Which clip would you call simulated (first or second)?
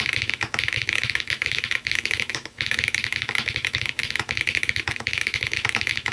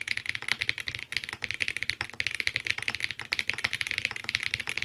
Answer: first